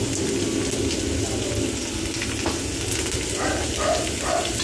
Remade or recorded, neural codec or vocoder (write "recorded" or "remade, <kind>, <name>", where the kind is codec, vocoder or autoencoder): recorded